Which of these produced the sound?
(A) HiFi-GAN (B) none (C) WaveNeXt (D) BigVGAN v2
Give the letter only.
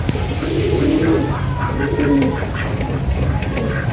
B